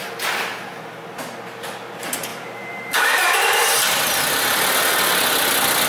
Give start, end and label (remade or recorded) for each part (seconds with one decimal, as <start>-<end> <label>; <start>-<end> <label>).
0.0-2.3 recorded; 2.3-3.4 remade; 3.4-5.9 recorded